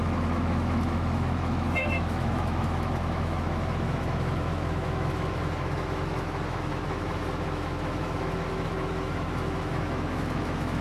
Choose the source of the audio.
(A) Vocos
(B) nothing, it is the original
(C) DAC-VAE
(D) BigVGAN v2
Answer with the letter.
C